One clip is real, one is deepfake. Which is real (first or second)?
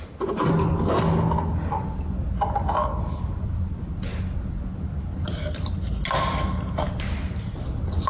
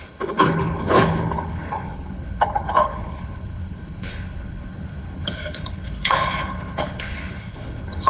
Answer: first